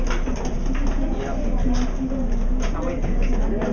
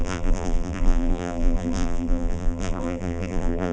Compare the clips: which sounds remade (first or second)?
second